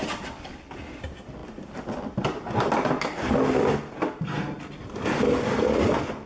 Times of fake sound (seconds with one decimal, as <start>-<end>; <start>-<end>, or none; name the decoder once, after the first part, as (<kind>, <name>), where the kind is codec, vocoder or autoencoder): none